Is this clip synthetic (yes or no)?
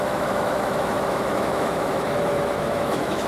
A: yes